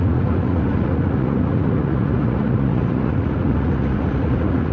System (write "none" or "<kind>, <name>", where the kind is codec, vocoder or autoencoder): vocoder, Vocos